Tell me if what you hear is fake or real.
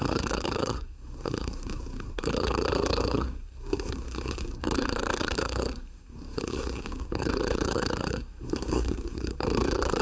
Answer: fake